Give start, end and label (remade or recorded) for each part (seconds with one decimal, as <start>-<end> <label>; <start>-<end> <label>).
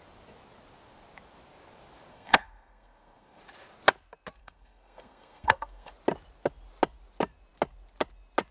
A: 0.0-2.1 recorded; 2.1-3.4 remade; 3.4-4.4 recorded; 4.4-5.9 remade; 5.9-8.5 recorded